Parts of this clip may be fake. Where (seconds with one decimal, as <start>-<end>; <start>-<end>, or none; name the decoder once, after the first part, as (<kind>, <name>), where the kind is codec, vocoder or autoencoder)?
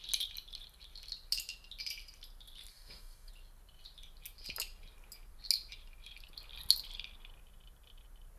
2.7-3.3 (codec, DAC)